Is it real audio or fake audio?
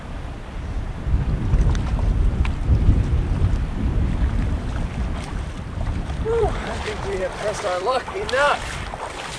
fake